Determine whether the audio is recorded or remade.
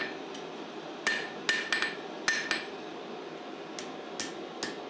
recorded